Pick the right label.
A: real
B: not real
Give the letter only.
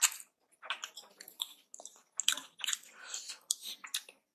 A